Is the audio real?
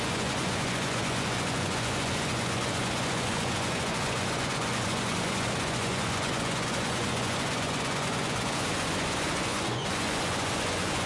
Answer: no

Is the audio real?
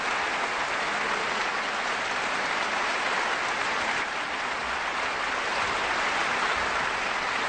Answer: yes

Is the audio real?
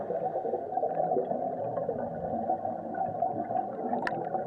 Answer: yes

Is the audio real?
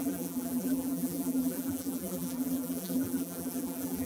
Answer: no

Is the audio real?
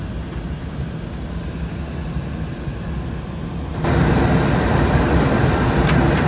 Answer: yes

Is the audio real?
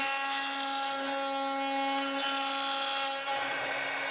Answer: yes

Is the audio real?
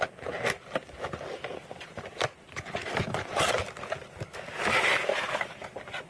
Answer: yes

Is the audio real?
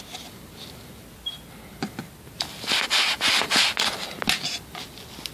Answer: yes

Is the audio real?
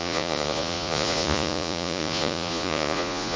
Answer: no